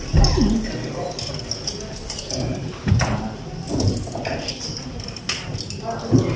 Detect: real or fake real